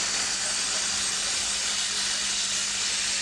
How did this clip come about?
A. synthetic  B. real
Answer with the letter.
B